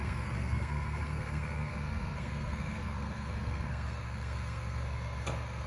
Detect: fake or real fake